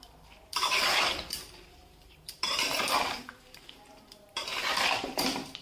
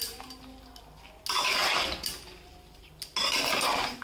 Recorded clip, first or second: second